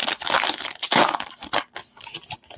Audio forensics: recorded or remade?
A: recorded